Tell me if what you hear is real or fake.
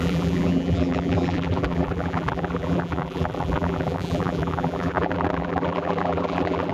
fake